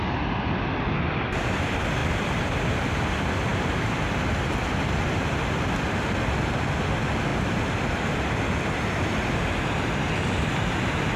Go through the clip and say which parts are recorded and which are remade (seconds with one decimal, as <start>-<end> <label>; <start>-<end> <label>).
0.0-2.0 recorded; 2.0-2.5 remade; 2.5-3.5 recorded; 3.5-4.3 remade; 4.3-11.2 recorded